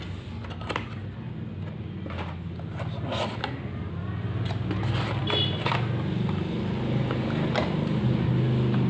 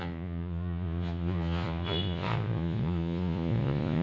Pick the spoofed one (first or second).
second